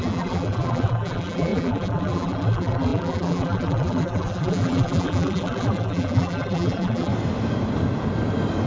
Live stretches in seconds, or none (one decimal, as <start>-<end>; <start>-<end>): 7.1-8.7